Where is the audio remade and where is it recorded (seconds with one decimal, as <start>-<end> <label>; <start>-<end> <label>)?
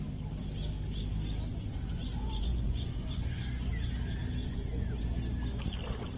0.0-1.5 recorded; 1.5-3.7 remade; 3.7-4.4 recorded; 4.4-5.0 remade; 5.0-6.2 recorded